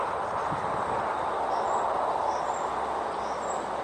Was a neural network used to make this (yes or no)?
no